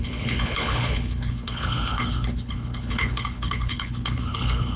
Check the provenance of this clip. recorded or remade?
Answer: remade